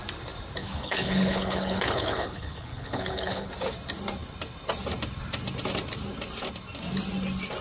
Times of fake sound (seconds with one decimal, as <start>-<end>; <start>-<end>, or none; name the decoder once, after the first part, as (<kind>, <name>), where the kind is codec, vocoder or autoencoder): 0.6-3.5 (codec, HILCodec)